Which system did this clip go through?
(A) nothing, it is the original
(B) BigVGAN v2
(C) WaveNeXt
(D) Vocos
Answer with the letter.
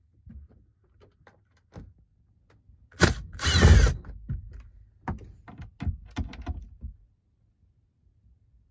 A